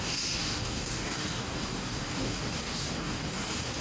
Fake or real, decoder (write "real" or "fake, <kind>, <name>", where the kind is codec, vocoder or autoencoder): fake, codec, DAC